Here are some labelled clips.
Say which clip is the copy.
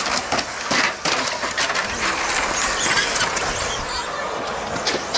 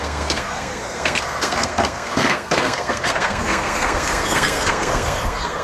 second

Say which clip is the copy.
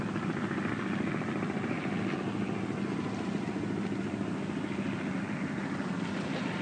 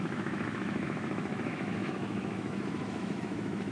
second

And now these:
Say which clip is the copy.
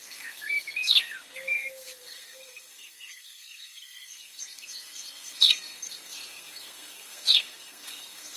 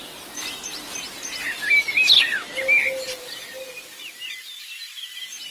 first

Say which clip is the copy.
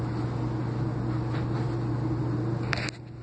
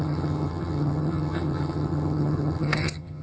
second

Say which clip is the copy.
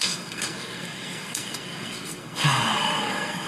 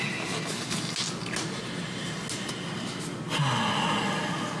first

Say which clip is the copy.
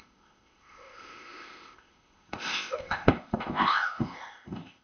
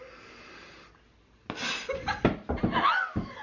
first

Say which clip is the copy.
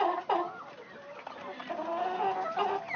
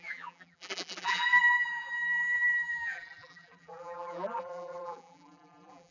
second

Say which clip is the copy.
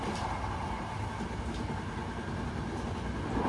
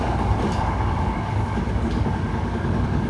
second